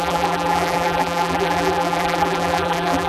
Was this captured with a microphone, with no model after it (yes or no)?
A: no